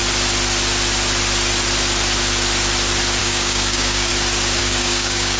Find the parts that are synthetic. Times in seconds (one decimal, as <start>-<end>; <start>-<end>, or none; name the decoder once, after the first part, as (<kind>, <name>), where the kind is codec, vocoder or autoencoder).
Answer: 3.2-4.1 (codec, DAC); 4.6-5.4